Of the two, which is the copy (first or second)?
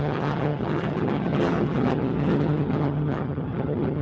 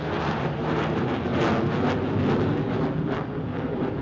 first